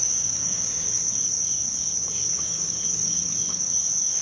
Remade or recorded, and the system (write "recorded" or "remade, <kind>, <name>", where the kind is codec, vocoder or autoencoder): remade, codec, DAC